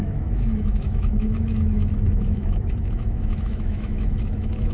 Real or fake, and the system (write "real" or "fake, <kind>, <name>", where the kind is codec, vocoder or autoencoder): fake, autoencoder, DAC-VAE